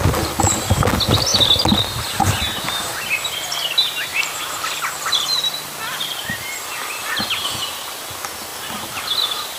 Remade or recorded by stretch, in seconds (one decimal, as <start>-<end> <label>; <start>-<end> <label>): 0.0-4.1 recorded; 4.1-5.6 remade; 5.6-9.6 recorded